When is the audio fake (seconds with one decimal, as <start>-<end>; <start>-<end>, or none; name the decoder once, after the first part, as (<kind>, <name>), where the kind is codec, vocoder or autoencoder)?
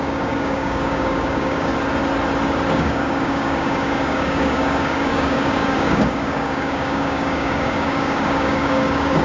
0.0-1.7 (codec, DAC); 2.7-9.2